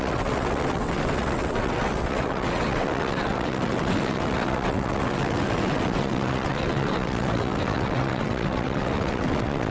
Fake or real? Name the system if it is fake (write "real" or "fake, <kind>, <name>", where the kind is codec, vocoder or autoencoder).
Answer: fake, vocoder, WaveNeXt